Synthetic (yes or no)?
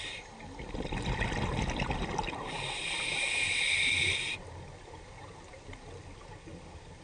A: no